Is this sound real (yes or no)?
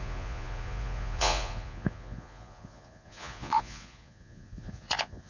no